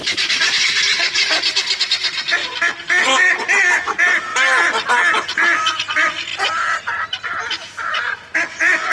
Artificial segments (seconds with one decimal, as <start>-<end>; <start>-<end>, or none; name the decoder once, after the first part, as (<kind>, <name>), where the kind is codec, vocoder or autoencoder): none